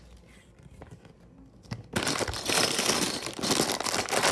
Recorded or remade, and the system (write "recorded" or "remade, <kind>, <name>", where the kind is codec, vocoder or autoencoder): recorded